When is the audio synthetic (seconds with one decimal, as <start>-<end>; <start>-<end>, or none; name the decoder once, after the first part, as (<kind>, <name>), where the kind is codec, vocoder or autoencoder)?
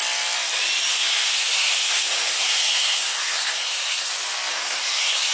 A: 0.9-4.1 (codec, SNAC); 4.5-5.3